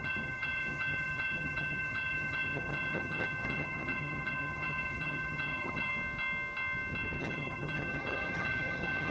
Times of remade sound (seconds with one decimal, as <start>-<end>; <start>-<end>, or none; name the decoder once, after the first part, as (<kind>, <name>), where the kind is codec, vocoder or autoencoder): 0.0-5.9 (vocoder, HiFi-GAN); 7.2-9.1